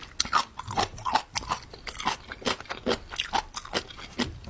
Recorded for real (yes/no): yes